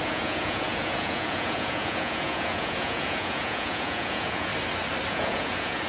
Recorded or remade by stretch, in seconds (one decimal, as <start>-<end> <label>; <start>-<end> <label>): 0.0-4.5 remade; 4.5-5.1 recorded; 5.1-5.9 remade